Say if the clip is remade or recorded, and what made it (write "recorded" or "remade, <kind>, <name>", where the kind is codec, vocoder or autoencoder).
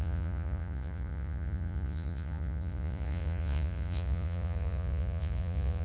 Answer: remade, vocoder, Vocos